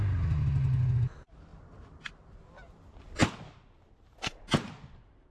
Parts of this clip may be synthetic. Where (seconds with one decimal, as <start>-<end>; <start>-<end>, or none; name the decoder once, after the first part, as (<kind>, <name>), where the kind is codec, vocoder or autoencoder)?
none